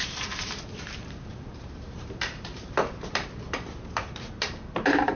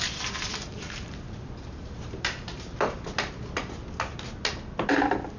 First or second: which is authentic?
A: second